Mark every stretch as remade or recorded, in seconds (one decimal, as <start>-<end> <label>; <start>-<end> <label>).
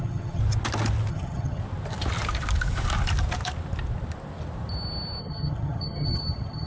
0.0-0.4 remade; 0.4-1.1 recorded; 1.1-1.6 remade; 1.6-5.2 recorded; 5.2-6.7 remade